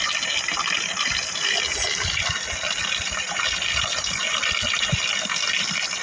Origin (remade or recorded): recorded